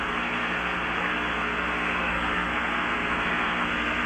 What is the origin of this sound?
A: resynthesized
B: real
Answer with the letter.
A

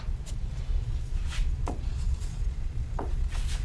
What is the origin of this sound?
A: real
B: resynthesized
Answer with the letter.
B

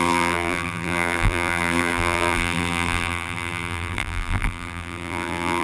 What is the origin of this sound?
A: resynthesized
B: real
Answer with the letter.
A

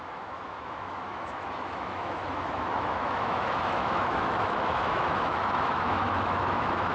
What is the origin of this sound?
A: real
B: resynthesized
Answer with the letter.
B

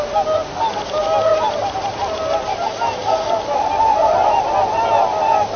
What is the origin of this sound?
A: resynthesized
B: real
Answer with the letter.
B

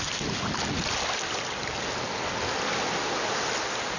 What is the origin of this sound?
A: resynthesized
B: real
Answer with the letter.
B